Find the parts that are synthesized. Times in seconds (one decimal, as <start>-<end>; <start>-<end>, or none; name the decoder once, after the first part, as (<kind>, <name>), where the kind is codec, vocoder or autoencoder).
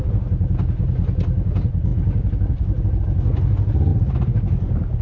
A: none